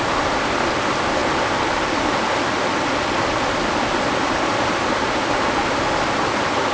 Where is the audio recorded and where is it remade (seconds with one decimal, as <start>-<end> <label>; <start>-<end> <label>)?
0.0-6.7 recorded